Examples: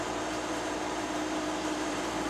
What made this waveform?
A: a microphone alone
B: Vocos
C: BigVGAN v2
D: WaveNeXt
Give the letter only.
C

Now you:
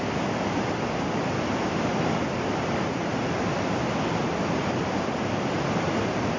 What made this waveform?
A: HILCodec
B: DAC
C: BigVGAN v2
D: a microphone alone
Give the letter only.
D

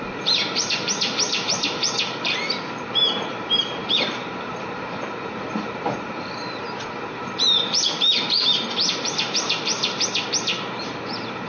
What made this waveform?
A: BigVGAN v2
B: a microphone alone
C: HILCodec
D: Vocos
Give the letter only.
A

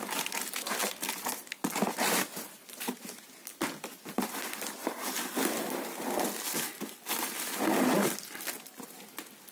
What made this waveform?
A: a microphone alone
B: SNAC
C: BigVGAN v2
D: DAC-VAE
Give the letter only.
A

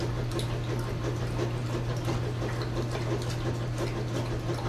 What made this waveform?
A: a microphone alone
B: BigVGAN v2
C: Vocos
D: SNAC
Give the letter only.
A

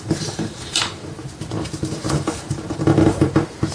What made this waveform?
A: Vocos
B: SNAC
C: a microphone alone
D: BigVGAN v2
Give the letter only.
D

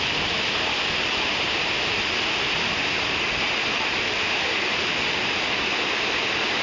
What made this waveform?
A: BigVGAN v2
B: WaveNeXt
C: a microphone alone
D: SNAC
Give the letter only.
C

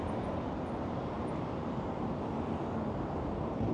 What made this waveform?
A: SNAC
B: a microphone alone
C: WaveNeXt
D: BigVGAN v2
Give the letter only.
D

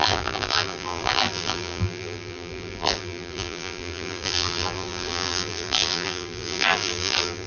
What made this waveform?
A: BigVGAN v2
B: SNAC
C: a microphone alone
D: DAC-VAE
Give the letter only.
A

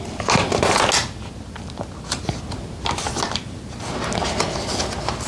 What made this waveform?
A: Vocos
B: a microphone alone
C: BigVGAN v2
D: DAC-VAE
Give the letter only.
B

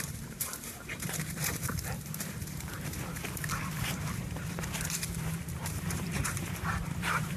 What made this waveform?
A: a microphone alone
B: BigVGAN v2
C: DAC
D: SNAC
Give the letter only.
B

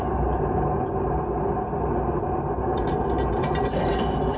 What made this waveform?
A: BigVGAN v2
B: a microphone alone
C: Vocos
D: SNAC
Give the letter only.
A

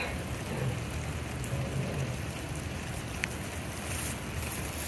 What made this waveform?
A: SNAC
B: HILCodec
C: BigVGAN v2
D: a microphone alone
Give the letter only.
D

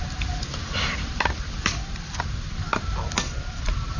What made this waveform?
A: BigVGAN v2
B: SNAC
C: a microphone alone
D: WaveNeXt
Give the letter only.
A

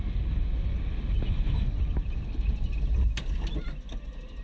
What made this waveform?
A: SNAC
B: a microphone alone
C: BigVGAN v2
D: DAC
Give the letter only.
B